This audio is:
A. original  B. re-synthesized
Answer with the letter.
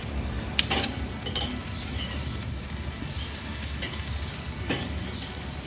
A